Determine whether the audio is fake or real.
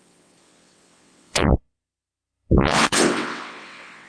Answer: fake